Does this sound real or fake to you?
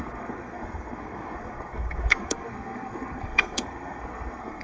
fake